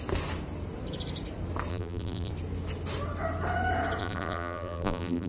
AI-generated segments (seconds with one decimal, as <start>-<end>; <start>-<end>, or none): 1.7-2.3; 4.0-5.3